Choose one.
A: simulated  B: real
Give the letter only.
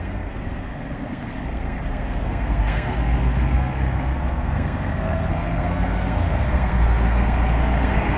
A